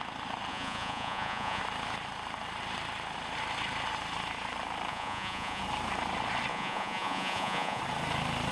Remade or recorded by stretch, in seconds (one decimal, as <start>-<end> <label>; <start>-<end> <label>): 0.0-0.5 recorded; 0.5-1.6 remade; 1.6-4.9 recorded; 4.9-5.6 remade; 5.6-6.5 recorded; 6.5-7.8 remade; 7.8-8.5 recorded